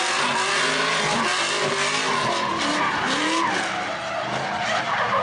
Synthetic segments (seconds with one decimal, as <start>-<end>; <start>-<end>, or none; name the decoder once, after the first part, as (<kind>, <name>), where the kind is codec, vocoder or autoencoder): none